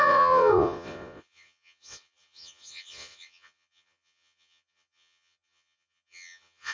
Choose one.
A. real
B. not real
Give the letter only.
B